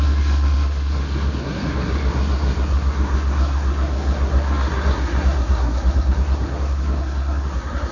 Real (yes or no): no